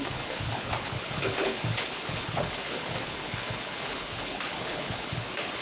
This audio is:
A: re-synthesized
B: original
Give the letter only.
A